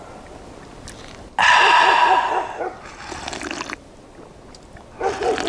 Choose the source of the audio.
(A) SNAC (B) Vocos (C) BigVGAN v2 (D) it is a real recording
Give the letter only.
D